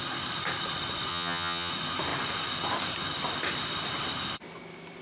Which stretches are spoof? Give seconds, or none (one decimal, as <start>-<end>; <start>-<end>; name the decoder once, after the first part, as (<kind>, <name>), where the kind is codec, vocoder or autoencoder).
1.1-1.7 (vocoder, HiFi-GAN)